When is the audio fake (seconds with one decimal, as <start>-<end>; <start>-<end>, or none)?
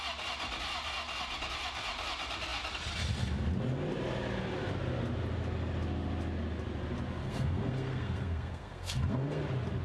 7.2-9.4